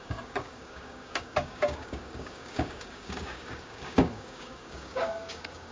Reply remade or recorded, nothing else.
remade